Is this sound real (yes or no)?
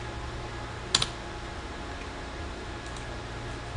yes